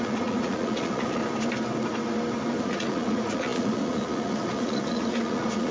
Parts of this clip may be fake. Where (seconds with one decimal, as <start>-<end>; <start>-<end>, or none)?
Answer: 0.0-1.2; 2.6-5.7